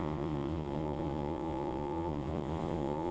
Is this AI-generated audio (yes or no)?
yes